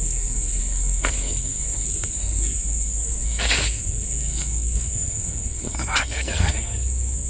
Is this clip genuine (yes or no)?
no